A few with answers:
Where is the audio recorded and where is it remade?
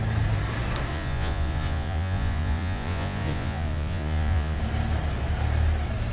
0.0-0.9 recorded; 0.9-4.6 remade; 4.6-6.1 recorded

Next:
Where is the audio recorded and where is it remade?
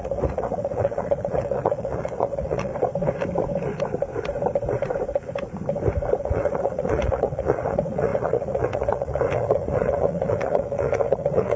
0.0-2.7 remade; 2.7-6.2 recorded; 6.2-11.6 remade